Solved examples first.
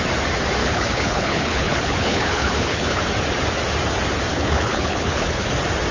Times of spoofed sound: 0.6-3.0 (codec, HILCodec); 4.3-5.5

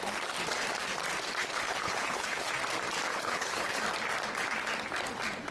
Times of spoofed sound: 1.4-2.5 (codec, HILCodec); 3.1-3.8

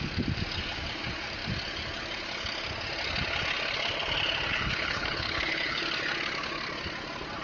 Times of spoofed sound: 4.5-5.8 (codec, HILCodec)

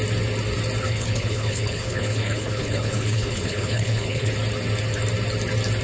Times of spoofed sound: 0.9-4.3 (codec, HILCodec)

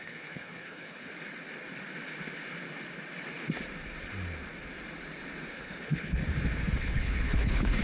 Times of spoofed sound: 0.0-1.1 (codec, HILCodec); 5.5-6.2; 6.8-7.8

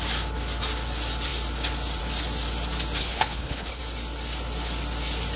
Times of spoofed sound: 3.0-3.8 (codec, HILCodec)

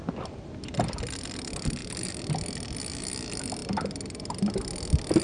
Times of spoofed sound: none

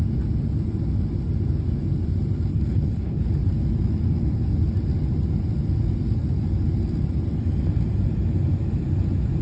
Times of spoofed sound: 2.5-3.3 (codec, HILCodec)